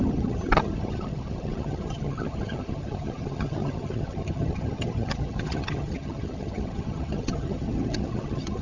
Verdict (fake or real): fake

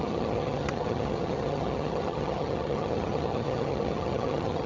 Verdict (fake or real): fake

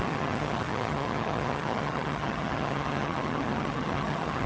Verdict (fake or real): fake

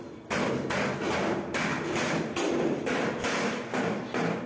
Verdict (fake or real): real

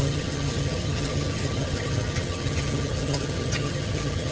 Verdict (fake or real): fake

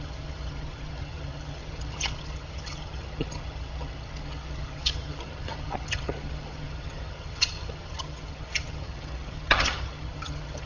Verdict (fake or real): fake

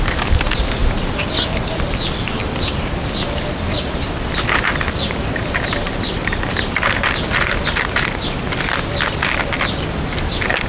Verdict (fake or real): real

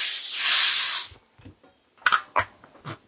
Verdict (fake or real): real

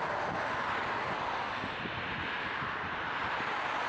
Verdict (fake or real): real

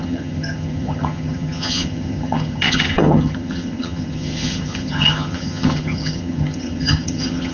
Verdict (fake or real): fake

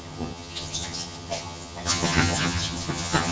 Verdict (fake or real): fake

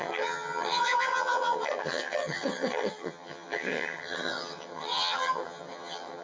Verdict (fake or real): fake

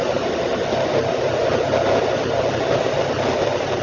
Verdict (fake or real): real